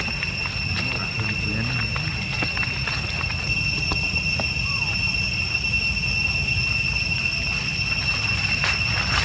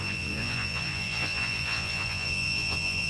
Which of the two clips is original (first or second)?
first